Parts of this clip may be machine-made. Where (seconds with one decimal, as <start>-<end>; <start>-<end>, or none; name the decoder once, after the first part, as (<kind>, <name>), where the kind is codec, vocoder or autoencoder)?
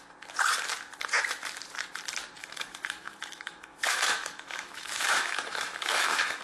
2.4-6.4 (autoencoder, DAC-VAE)